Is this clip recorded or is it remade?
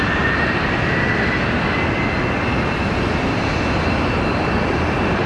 recorded